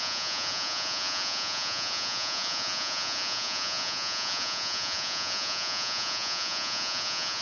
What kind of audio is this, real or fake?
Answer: fake